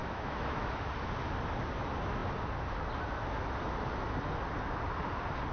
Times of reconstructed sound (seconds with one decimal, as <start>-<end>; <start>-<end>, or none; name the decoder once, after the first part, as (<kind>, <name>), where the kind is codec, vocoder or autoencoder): 0.0-0.8 (autoencoder, DAC-VAE)